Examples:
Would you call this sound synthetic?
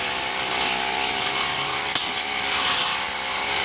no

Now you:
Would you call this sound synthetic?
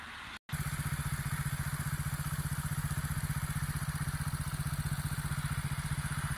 no